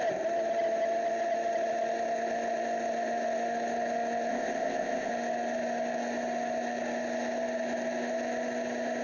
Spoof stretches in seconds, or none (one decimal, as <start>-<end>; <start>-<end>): 4.3-5.1